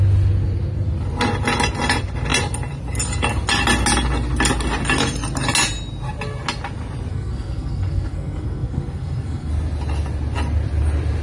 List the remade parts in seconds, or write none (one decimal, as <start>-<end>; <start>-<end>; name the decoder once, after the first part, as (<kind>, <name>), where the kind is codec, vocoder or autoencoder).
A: 7.1-9.5 (codec, SNAC)